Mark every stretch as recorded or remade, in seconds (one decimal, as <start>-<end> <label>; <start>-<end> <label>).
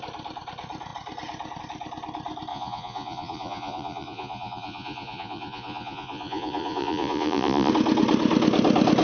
0.0-2.5 recorded; 2.5-7.7 remade; 7.7-9.0 recorded